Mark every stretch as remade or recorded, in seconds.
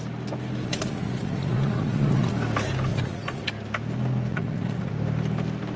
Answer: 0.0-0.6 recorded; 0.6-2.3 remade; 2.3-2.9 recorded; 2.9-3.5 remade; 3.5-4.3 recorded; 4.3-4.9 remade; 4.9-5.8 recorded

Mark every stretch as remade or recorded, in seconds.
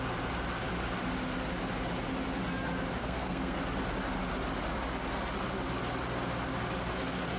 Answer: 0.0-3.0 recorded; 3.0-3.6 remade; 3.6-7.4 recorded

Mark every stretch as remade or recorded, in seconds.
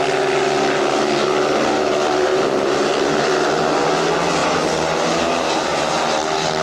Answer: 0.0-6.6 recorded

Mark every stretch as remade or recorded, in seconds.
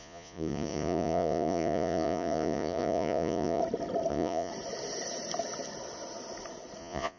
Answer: 0.0-3.6 remade; 3.6-4.1 recorded; 4.1-4.5 remade; 4.5-6.8 recorded; 6.8-7.2 remade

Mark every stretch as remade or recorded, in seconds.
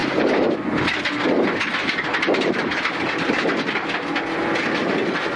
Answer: 0.0-1.0 remade; 1.0-5.4 recorded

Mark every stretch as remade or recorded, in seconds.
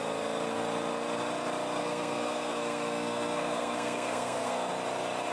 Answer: 0.0-1.8 recorded; 1.8-4.7 remade; 4.7-5.3 recorded